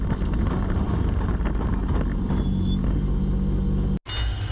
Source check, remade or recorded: recorded